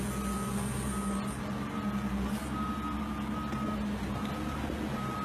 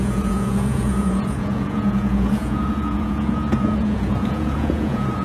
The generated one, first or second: second